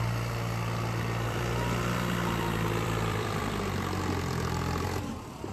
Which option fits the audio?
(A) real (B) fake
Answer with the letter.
B